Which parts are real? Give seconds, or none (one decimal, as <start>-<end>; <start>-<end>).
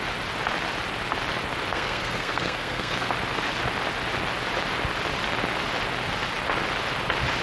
0.0-1.7; 3.1-7.4